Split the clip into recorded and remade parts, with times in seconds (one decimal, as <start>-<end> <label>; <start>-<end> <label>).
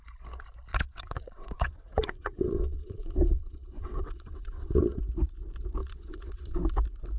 0.0-0.7 recorded; 0.7-5.0 remade; 5.0-5.8 recorded; 5.8-6.6 remade; 6.6-7.2 recorded